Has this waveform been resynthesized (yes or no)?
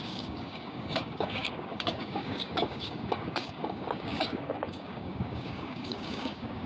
yes